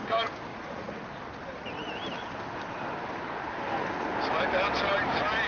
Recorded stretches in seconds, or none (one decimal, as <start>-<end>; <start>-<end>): 0.0-0.5; 1.0-5.5